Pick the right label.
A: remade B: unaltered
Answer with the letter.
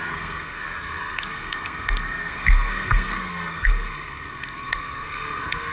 A